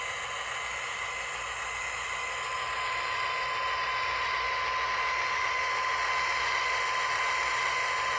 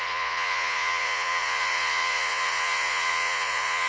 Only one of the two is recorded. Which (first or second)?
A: first